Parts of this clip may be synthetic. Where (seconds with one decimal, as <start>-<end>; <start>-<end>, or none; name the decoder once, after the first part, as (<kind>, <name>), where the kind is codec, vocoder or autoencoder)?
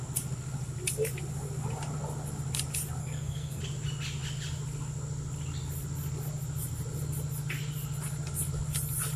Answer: 3.0-3.6 (codec, SNAC)